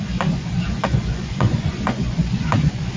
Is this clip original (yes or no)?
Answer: no